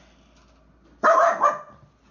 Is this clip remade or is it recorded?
recorded